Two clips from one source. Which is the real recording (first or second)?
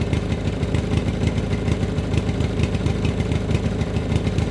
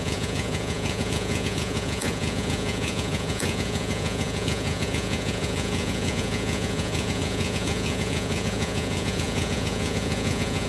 first